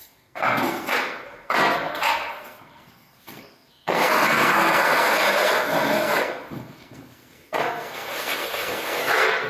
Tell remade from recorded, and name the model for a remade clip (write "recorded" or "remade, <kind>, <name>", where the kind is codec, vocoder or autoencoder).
remade, codec, SNAC